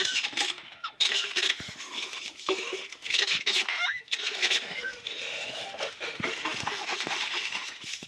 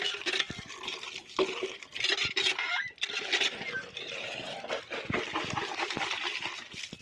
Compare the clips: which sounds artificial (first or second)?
first